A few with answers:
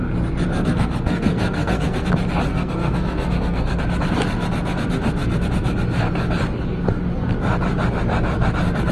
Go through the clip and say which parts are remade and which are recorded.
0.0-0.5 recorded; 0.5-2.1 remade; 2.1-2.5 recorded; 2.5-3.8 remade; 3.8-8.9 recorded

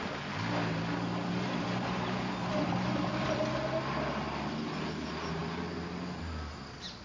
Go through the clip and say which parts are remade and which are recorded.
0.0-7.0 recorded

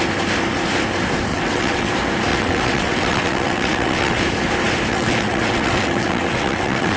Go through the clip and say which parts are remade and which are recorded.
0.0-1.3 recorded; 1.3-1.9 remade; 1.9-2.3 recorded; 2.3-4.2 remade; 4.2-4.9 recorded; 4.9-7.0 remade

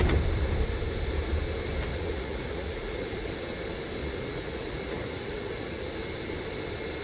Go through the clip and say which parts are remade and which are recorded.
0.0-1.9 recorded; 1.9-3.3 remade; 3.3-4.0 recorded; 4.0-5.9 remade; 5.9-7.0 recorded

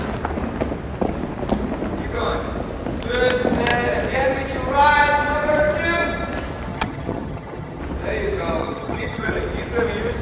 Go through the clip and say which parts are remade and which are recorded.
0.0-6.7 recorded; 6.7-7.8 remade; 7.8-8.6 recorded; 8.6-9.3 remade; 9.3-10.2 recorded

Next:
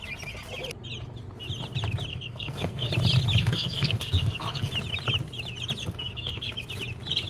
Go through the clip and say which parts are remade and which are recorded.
0.0-2.1 recorded; 2.1-2.9 remade; 2.9-3.4 recorded; 3.4-4.7 remade; 4.7-5.8 recorded; 5.8-6.5 remade; 6.5-7.3 recorded